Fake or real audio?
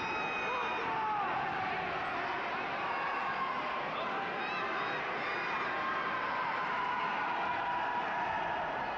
real